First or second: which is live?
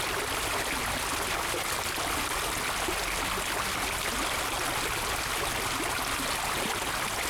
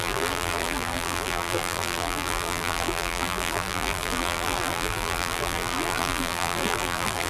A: first